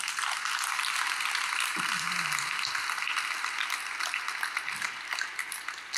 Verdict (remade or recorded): recorded